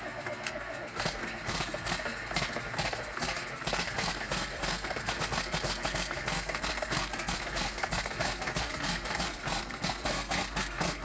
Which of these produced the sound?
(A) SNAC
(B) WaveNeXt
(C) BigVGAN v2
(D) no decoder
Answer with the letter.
A